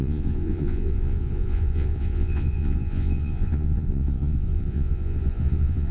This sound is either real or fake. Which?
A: fake